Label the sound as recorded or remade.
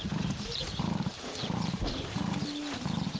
remade